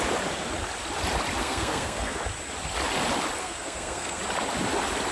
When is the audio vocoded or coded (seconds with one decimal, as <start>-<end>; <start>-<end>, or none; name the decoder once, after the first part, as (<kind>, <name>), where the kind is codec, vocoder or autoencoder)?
1.4-2.2 (codec, SNAC); 3.4-4.2